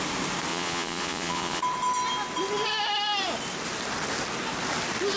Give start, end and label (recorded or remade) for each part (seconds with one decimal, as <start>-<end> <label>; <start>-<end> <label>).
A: 0.0-0.5 recorded; 0.5-1.6 remade; 1.6-5.2 recorded

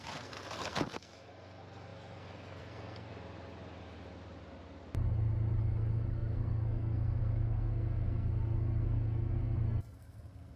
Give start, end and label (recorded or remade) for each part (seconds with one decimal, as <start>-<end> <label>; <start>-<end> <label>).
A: 0.0-3.1 remade; 3.1-5.6 recorded; 5.6-10.6 remade

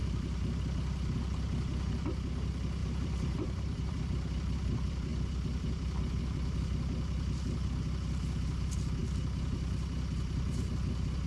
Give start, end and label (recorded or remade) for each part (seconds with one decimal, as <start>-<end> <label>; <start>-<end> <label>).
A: 0.0-0.6 remade; 0.6-2.8 recorded; 2.8-4.0 remade; 4.0-11.3 recorded